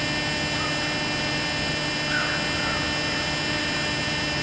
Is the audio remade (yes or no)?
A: no